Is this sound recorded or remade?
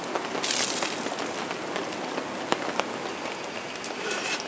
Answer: recorded